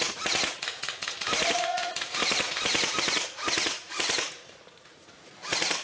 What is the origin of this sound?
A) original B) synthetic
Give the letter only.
B